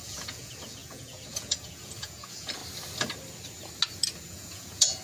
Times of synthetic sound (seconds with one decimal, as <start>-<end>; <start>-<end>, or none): 0.0-2.6; 4.3-5.0